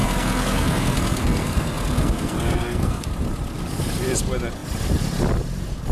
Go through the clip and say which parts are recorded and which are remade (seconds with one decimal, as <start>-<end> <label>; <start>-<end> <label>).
0.0-3.1 remade; 3.1-5.9 recorded